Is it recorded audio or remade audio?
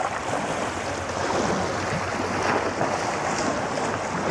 recorded